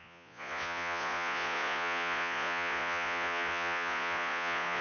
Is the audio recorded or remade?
remade